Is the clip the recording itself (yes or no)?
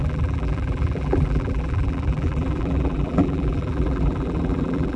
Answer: no